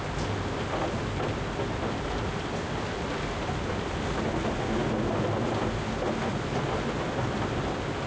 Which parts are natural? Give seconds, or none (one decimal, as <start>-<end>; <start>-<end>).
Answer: 0.0-8.1